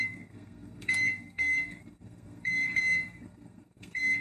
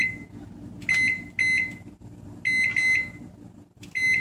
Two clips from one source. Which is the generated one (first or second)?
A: first